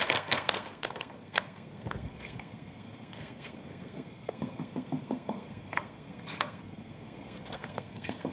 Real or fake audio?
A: fake